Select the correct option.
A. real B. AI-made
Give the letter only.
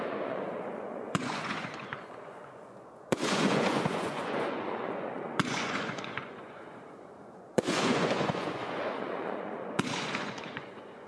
B